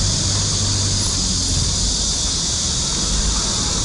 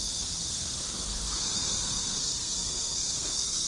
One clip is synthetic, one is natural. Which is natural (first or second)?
first